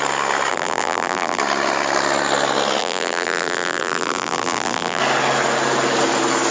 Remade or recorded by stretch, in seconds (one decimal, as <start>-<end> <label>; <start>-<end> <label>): 0.0-0.5 recorded; 0.5-1.4 remade; 1.4-2.8 recorded; 2.8-5.0 remade; 5.0-6.5 recorded